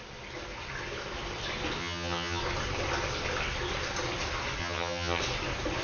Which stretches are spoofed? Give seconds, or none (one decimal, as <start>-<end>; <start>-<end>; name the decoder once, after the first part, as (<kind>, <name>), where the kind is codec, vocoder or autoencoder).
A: 1.8-2.4 (vocoder, HiFi-GAN); 4.6-5.2